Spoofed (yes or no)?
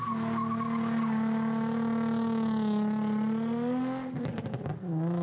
no